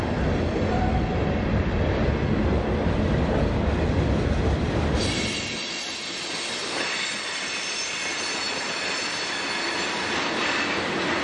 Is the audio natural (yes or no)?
yes